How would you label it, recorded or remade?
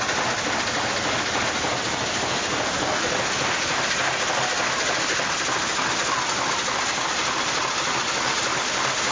recorded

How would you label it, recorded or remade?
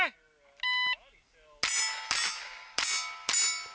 recorded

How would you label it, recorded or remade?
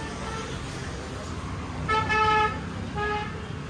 recorded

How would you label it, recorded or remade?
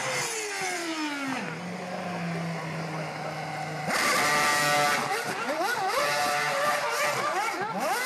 recorded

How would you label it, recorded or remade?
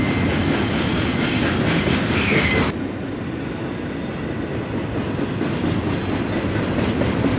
recorded